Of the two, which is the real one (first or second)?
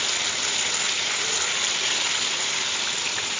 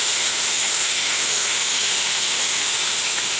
first